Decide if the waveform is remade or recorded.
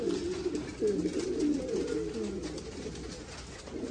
recorded